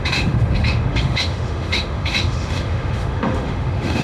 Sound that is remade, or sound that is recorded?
remade